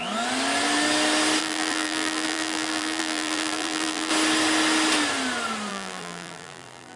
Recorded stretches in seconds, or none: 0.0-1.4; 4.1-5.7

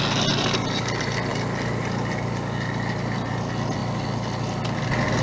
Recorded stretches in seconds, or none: 0.0-5.2

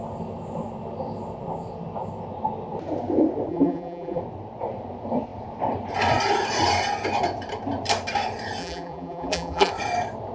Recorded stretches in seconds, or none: 0.0-3.5; 4.2-8.6; 9.7-10.3